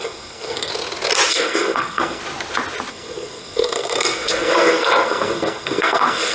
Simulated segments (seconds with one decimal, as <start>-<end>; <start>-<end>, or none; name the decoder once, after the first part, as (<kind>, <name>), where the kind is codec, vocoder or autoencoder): 0.0-0.7 (codec, SNAC); 1.3-2.2; 2.9-6.3